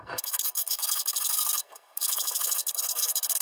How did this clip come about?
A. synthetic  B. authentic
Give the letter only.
A